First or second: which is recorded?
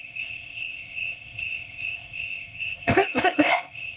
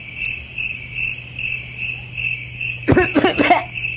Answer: second